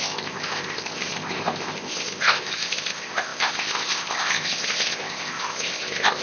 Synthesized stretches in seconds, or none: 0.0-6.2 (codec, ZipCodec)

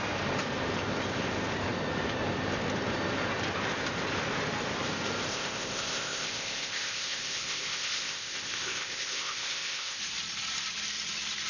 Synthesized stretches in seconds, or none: 5.3-10.0 (codec, ZipCodec)

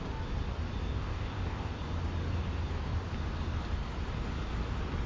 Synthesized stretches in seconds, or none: 0.9-1.8 (codec, ZipCodec)

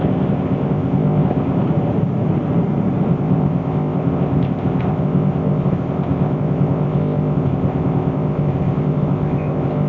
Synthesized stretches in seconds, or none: 0.0-1.6 (codec, ZipCodec); 3.1-9.9

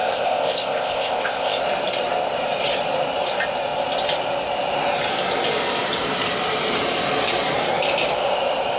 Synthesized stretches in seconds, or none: 0.0-1.6 (codec, ZipCodec)

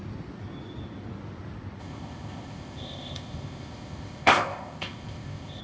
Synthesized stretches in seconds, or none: 1.8-5.6 (codec, ZipCodec)

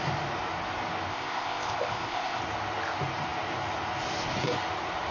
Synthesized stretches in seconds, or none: 1.1-2.4 (codec, ZipCodec)

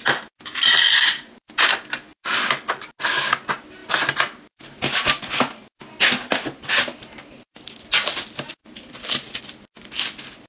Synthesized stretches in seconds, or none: none